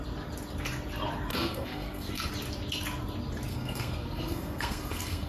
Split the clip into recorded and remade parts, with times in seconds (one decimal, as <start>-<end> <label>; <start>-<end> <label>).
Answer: 0.0-1.3 recorded; 1.3-2.3 remade; 2.3-3.5 recorded; 3.5-5.3 remade